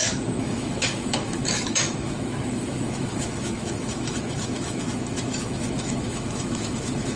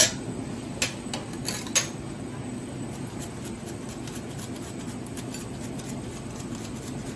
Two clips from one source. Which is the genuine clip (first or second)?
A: second